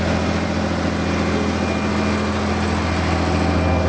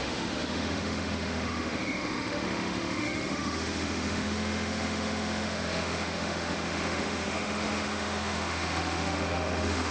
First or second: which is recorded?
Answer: first